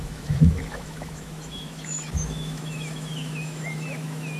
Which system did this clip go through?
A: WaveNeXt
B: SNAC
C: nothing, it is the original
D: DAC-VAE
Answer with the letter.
D